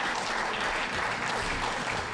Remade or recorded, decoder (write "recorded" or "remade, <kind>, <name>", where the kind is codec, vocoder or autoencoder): recorded